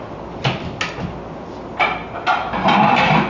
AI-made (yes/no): no